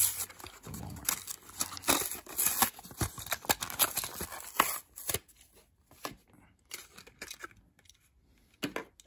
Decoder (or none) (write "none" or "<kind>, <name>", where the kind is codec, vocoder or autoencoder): none